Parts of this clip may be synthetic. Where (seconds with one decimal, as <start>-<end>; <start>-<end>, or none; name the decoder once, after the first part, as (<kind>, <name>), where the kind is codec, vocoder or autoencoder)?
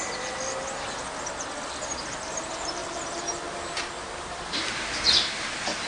none